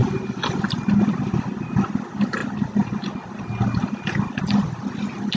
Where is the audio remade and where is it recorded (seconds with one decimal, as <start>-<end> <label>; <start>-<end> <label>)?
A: 0.0-5.4 recorded